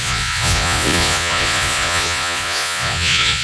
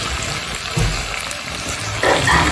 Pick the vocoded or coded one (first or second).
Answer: first